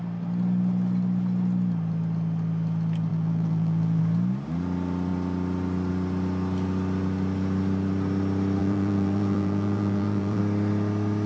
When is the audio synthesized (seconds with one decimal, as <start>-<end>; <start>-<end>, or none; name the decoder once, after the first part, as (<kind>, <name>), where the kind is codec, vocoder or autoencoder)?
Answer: 3.1-4.0 (vocoder, BigVGAN v2); 8.6-10.4

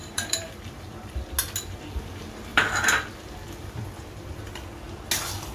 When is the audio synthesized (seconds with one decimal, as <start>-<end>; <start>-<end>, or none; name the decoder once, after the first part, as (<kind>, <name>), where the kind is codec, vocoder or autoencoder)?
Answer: 0.0-1.3 (vocoder, BigVGAN v2); 2.5-4.4